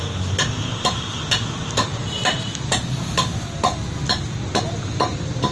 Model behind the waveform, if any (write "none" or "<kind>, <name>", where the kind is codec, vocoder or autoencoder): none